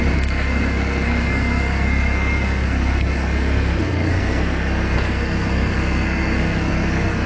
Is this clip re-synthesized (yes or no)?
yes